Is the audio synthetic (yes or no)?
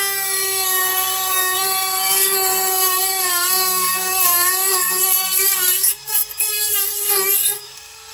yes